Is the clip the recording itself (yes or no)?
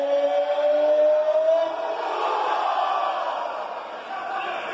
yes